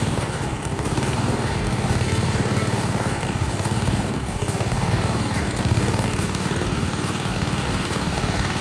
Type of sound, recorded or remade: remade